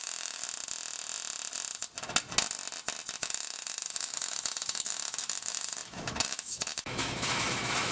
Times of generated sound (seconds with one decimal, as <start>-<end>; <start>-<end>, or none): 0.0-0.4; 3.2-7.9